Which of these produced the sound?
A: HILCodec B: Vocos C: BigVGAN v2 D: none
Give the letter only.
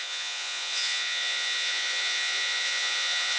B